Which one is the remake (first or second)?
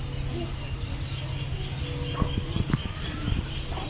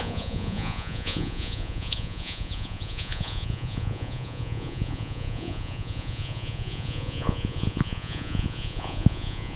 second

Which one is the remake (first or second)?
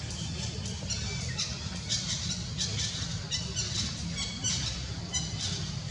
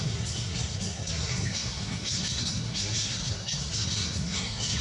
second